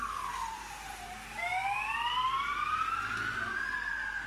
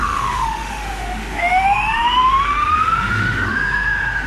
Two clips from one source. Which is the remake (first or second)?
second